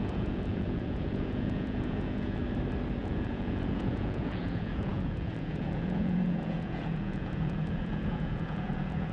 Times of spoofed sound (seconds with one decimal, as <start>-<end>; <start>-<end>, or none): 0.0-2.4; 3.0-9.1